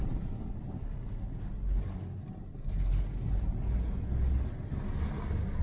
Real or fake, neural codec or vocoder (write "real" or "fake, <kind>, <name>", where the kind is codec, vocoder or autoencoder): real